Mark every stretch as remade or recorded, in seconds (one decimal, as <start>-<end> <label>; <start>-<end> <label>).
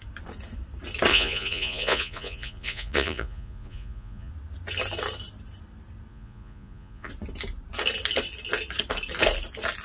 0.0-1.1 recorded; 1.1-4.3 remade; 4.3-6.1 recorded; 6.1-7.1 remade; 7.1-9.8 recorded